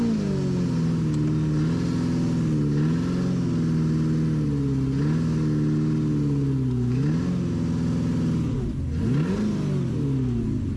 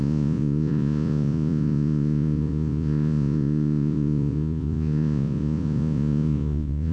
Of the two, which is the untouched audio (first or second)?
first